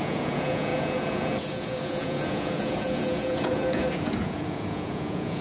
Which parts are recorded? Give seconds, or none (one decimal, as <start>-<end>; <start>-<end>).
none